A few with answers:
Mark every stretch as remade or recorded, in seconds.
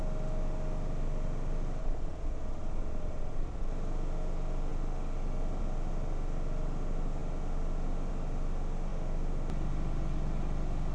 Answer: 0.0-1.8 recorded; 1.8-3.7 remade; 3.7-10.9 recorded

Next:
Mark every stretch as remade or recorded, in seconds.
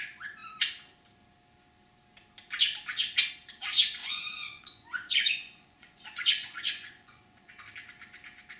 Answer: 0.0-4.0 recorded; 4.0-7.5 remade; 7.5-8.6 recorded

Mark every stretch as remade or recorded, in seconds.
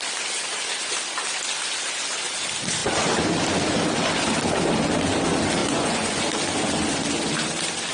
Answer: 0.0-5.6 recorded; 5.6-6.2 remade; 6.2-7.9 recorded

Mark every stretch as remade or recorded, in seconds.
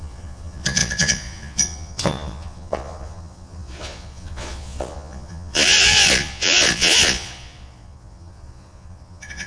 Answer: 0.0-9.5 remade